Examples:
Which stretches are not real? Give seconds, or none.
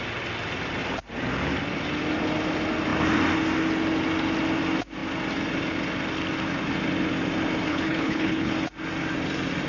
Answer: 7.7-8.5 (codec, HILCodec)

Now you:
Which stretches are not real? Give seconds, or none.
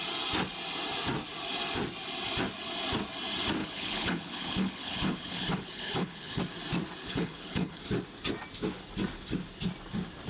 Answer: 3.6-6.4 (codec, HILCodec); 7.0-7.8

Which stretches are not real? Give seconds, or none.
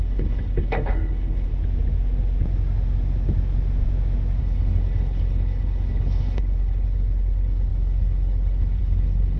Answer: 0.0-1.5 (codec, HILCodec); 4.4-9.4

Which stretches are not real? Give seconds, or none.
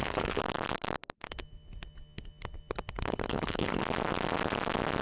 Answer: 0.0-0.4 (codec, HILCodec); 1.3-3.8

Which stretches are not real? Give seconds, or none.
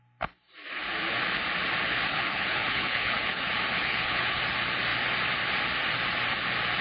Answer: 2.1-3.4 (codec, HILCodec); 3.8-4.4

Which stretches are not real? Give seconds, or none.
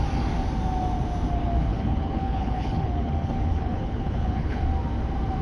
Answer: 1.7-4.6 (codec, HILCodec)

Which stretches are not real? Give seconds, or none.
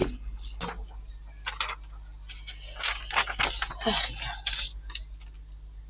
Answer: 0.0-0.6 (codec, HILCodec)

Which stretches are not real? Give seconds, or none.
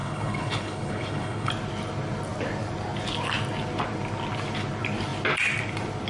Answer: 0.0-1.5 (codec, HILCodec)